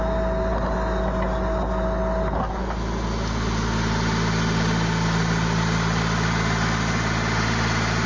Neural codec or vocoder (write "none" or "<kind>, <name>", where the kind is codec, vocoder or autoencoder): none